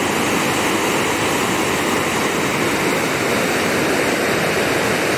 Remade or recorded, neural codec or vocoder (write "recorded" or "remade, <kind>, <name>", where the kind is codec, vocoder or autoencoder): recorded